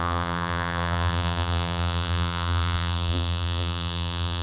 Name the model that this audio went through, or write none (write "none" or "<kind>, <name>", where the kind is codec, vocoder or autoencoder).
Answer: vocoder, BigVGAN v2